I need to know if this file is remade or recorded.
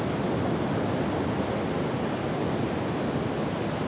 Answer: recorded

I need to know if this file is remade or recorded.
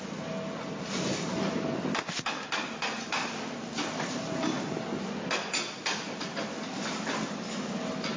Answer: recorded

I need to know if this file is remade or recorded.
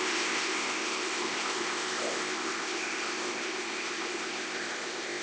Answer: remade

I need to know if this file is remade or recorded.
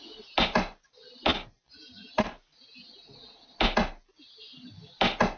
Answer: recorded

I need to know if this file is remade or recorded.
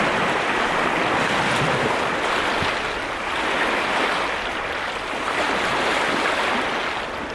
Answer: recorded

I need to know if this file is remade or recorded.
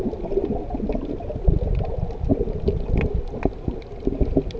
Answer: recorded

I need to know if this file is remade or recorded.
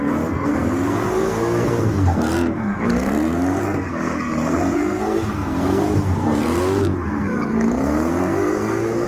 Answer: remade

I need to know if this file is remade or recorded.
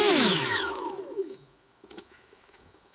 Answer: remade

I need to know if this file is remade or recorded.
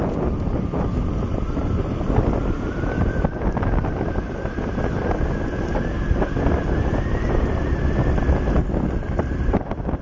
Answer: recorded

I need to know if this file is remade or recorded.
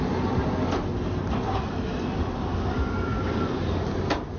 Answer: recorded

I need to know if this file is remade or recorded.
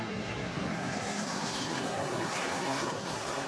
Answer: remade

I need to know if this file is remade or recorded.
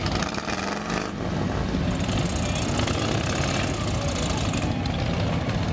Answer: recorded